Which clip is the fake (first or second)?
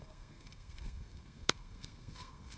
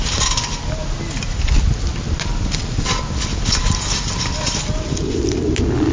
first